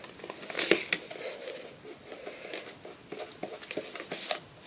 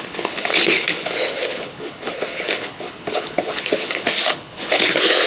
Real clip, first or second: first